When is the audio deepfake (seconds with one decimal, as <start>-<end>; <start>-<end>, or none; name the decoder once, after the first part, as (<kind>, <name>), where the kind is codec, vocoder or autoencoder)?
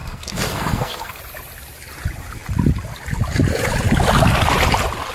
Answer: 0.0-1.2 (codec, SNAC)